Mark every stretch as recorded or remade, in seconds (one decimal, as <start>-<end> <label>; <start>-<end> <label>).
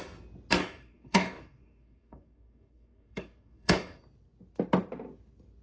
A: 0.0-0.6 recorded; 0.6-4.0 remade; 4.0-5.6 recorded